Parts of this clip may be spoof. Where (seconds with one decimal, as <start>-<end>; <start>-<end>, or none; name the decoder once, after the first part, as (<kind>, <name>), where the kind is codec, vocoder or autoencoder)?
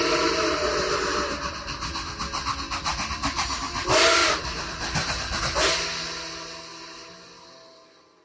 4.2-5.4 (vocoder, BigVGAN v2)